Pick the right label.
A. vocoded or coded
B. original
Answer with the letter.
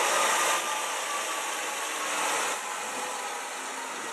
B